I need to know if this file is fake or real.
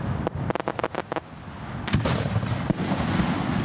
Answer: real